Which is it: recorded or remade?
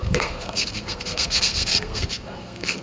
remade